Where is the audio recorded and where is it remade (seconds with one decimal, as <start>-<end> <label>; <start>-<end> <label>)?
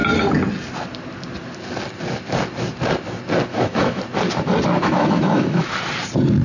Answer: 0.0-3.5 recorded; 3.5-4.0 remade; 4.0-4.8 recorded; 4.8-5.7 remade; 5.7-6.4 recorded